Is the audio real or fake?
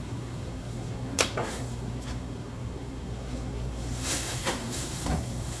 fake